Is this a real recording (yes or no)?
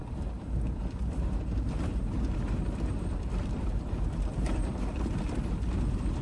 yes